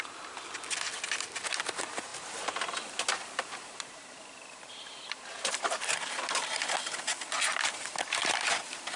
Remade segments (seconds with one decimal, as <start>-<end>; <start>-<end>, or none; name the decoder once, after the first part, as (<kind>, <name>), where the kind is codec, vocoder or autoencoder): 2.1-6.2 (vocoder, BigVGAN v2)